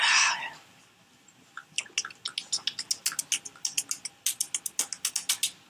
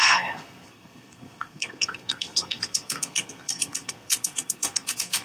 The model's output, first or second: second